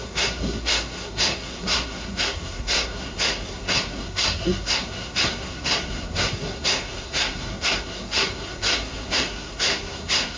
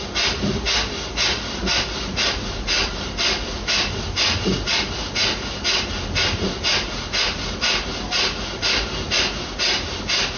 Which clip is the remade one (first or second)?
first